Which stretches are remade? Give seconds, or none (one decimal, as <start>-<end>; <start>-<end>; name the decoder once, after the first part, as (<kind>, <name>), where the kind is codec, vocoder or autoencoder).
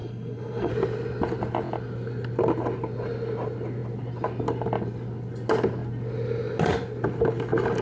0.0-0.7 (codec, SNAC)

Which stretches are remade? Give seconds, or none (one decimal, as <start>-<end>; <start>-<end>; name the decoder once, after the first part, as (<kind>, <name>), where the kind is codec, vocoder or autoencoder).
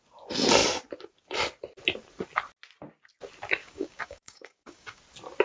3.6-5.0 (codec, DAC)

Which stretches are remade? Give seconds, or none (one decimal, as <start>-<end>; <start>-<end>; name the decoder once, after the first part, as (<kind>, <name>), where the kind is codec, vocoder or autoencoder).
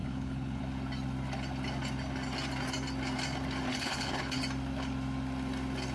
0.0-0.6 (codec, HILCodec); 3.7-4.4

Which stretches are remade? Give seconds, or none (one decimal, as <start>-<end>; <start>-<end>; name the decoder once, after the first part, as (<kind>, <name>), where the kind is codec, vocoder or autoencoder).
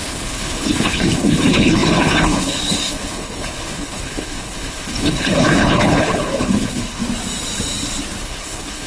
0.0-7.0 (codec, HILCodec); 8.2-8.9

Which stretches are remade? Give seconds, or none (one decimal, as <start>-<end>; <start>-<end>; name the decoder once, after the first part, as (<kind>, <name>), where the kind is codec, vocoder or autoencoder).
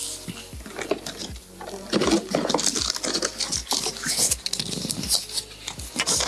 none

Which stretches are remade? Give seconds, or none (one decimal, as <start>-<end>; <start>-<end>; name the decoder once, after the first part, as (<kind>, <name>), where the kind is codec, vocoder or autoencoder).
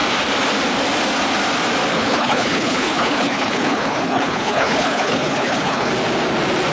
1.9-5.9 (codec, HILCodec)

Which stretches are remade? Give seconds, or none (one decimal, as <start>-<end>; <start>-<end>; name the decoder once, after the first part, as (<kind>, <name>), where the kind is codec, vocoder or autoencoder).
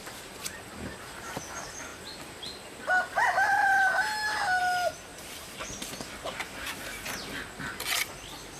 5.1-6.7 (vocoder, BigVGAN v2)